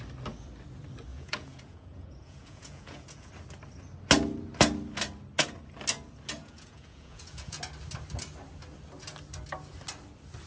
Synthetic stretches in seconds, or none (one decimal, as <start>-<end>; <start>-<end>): 1.1-3.3; 6.4-7.6